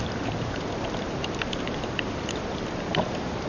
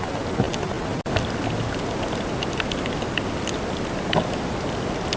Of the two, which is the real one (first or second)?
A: second